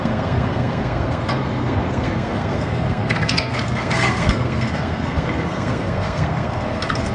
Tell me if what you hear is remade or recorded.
remade